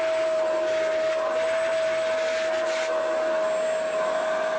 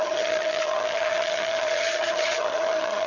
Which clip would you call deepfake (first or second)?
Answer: second